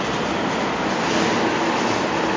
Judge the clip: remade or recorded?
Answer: recorded